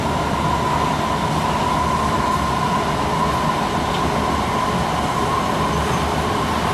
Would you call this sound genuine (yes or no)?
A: yes